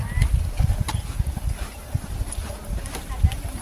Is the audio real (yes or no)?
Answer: yes